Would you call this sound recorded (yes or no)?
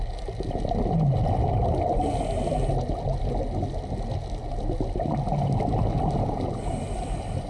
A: yes